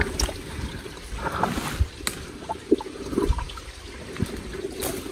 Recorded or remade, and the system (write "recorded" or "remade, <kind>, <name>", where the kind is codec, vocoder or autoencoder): recorded